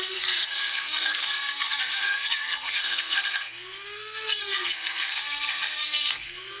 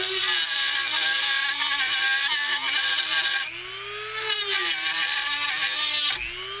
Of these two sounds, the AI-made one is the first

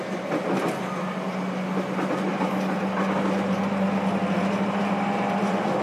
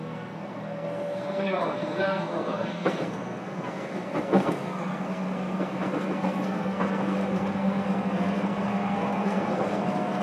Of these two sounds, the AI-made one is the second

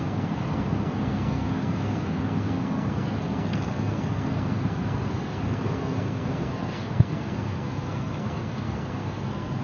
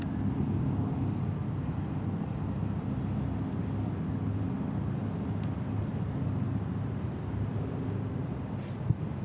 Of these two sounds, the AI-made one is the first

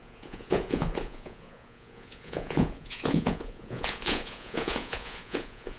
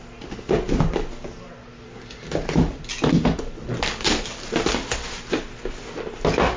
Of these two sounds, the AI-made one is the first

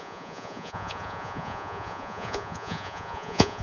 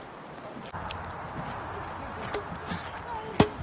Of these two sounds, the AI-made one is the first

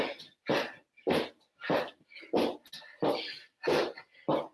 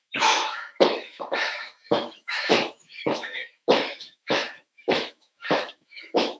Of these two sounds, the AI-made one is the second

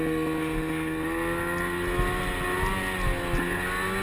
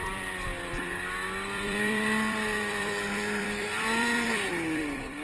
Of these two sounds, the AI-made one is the second